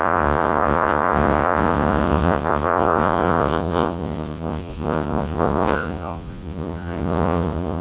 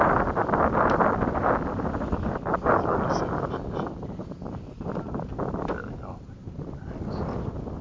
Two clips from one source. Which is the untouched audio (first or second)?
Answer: second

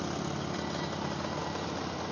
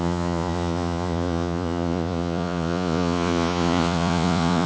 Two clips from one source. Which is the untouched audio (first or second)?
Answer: first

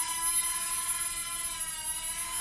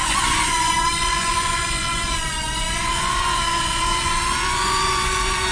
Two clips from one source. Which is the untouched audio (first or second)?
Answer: first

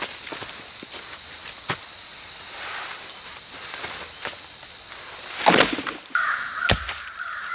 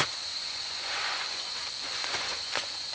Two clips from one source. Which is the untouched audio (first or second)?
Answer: first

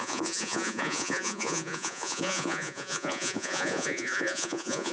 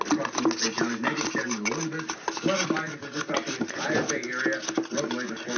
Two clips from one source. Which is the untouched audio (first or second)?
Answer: second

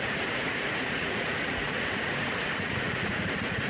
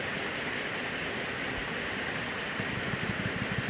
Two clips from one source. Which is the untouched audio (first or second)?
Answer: second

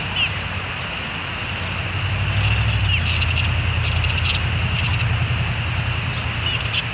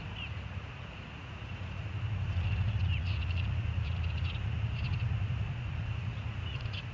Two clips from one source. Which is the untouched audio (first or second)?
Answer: first